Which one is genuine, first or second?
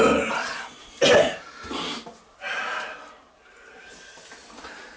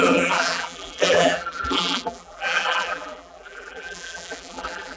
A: first